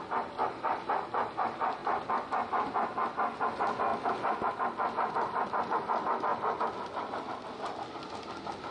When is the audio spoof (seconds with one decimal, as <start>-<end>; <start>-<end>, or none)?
0.4-1.4; 1.8-2.5; 3.9-4.5